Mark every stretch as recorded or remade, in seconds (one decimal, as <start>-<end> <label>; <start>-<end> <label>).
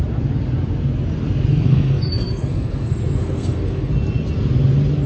0.0-1.5 recorded; 1.5-3.9 remade; 3.9-5.1 recorded